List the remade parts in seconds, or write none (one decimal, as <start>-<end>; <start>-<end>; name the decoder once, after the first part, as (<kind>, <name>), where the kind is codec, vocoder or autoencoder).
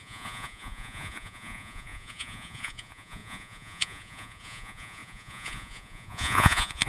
0.0-6.9 (vocoder, Vocos)